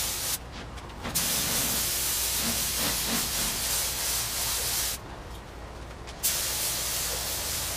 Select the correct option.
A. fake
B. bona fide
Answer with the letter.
B